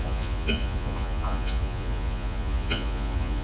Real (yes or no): no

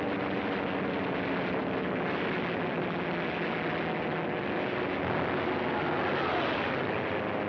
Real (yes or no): yes